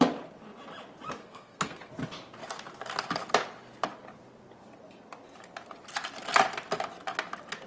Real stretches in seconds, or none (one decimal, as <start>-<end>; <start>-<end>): 0.0-1.2; 1.9-7.7